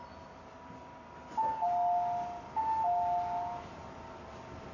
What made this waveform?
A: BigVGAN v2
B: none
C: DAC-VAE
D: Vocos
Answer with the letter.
B